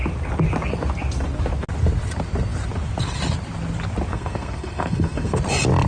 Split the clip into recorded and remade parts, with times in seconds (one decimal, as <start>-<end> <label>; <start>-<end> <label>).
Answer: 0.0-4.1 recorded; 4.1-5.4 remade; 5.4-5.9 recorded